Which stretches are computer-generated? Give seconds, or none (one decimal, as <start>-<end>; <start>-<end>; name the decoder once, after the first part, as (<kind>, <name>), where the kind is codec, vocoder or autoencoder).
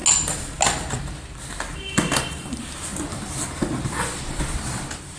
none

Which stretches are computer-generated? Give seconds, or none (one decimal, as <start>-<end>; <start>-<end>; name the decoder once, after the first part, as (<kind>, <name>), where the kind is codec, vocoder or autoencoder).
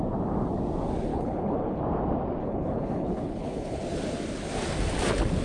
1.1-1.8 (codec, HILCodec); 2.4-3.8